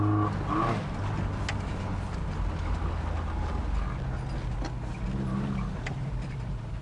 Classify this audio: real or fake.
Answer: real